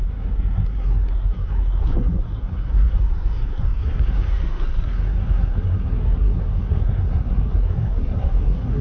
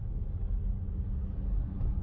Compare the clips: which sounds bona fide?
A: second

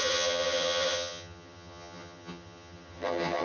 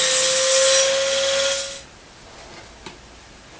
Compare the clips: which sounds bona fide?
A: second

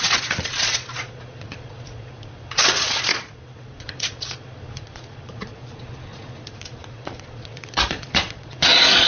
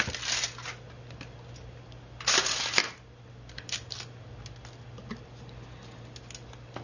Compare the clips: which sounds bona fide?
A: second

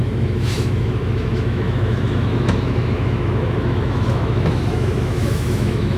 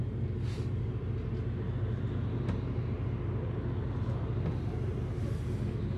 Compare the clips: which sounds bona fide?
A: second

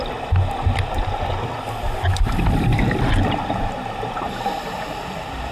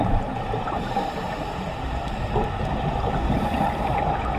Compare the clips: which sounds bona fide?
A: first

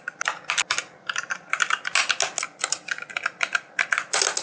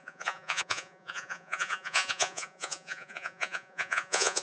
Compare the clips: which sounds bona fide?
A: first